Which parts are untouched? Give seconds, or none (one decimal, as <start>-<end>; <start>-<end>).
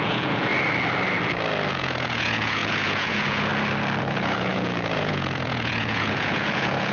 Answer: 0.5-1.7; 3.5-4.0